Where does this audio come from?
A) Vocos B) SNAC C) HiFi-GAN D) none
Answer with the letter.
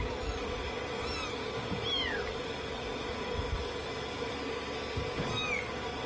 D